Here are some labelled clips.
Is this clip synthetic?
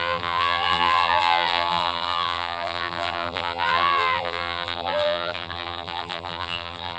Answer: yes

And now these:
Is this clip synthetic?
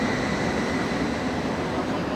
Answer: no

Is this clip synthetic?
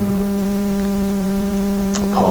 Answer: yes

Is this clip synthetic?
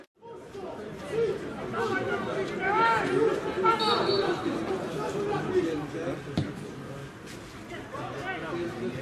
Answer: no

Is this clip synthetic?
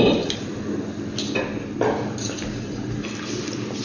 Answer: no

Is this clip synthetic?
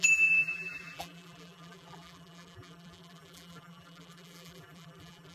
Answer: yes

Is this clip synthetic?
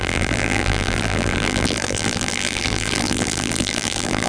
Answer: yes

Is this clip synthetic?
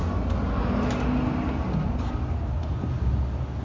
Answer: no